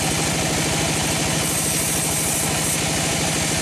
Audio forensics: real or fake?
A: real